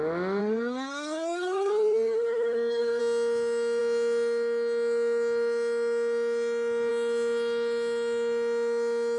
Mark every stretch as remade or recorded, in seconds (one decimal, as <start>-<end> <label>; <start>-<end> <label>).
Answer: 0.0-0.4 recorded; 0.4-3.0 remade; 3.0-9.2 recorded